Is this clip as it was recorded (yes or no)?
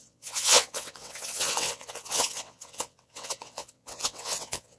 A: no